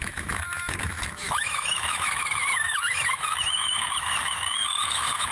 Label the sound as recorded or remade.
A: remade